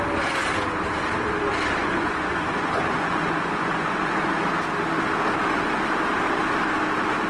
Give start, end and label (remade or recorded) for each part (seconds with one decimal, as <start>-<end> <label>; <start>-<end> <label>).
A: 0.0-1.8 recorded; 1.8-4.3 remade; 4.3-7.3 recorded